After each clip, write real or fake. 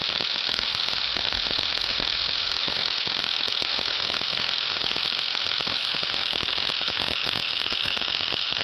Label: fake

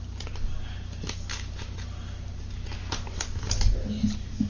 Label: real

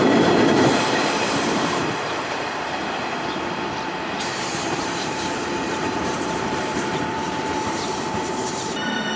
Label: fake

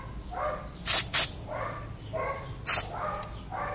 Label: real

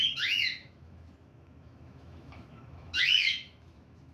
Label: fake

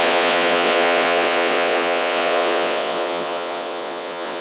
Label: fake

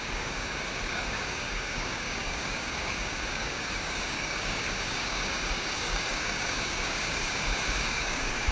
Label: fake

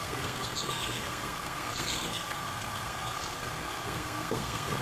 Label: fake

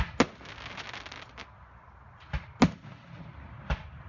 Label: real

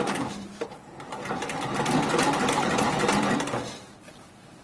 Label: fake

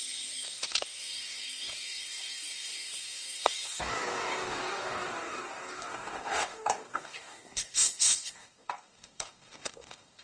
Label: fake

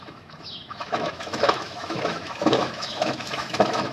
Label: fake